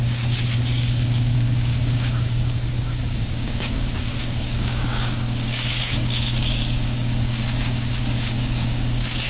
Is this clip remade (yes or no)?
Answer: yes